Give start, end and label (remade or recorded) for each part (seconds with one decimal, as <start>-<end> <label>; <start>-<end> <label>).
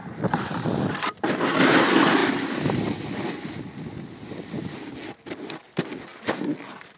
0.0-7.0 recorded